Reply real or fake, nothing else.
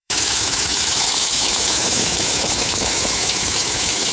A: fake